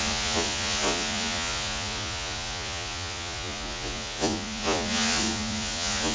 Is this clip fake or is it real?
fake